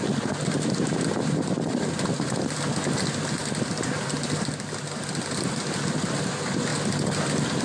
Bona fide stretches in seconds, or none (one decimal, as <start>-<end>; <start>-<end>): 0.0-7.6